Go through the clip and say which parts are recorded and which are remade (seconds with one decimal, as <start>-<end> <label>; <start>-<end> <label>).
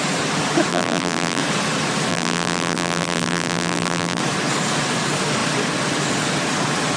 0.0-0.7 recorded; 0.7-1.4 remade; 1.4-2.1 recorded; 2.1-4.2 remade; 4.2-7.0 recorded